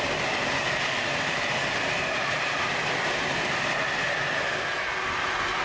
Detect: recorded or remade recorded